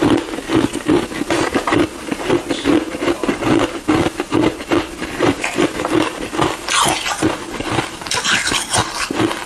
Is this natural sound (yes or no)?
yes